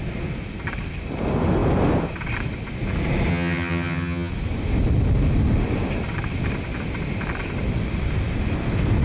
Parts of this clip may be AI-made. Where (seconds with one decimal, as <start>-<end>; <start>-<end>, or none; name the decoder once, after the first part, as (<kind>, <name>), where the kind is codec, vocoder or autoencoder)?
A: 3.3-4.3 (vocoder, HiFi-GAN)